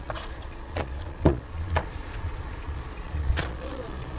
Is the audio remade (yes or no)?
yes